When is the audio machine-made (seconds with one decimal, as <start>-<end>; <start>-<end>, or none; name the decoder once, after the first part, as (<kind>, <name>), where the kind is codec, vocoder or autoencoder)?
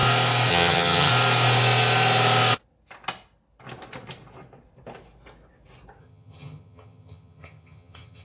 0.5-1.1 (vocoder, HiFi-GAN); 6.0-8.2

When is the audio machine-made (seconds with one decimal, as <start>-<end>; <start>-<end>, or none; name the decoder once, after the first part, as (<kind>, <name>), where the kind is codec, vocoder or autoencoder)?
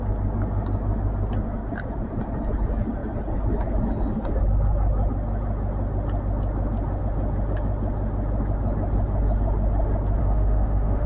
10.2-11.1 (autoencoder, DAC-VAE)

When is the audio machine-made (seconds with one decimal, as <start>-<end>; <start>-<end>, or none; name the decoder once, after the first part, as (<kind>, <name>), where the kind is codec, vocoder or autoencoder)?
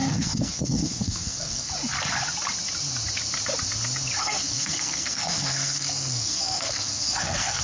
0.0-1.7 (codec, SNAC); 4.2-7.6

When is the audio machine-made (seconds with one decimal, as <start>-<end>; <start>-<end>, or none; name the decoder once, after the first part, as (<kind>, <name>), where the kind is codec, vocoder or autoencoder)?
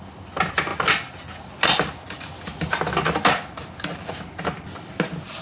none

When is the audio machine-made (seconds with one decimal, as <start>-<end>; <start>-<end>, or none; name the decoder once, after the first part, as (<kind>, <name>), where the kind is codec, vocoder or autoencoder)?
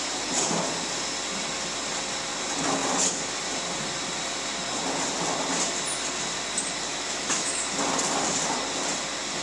6.9-7.5 (autoencoder, DAC-VAE)